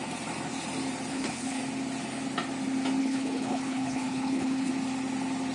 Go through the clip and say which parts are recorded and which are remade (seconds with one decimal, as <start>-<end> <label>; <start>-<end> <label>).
0.0-1.1 recorded; 1.1-1.6 remade; 1.6-3.0 recorded; 3.0-4.7 remade; 4.7-5.5 recorded

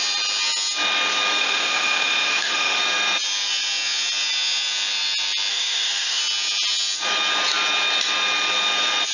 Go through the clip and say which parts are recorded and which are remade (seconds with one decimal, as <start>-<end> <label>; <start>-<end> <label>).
0.0-1.4 recorded; 1.4-2.8 remade; 2.8-5.5 recorded; 5.5-6.2 remade; 6.2-9.1 recorded

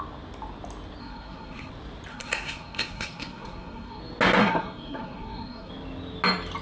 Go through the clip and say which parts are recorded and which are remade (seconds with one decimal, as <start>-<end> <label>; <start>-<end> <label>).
0.0-1.0 recorded; 1.0-1.7 remade; 1.7-2.1 recorded; 2.1-4.0 remade; 4.0-4.4 recorded; 4.4-5.7 remade; 5.7-6.6 recorded

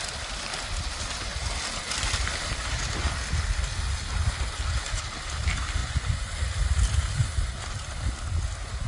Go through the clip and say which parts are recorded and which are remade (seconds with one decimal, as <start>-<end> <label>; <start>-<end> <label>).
0.0-5.8 recorded; 5.8-6.3 remade; 6.3-8.9 recorded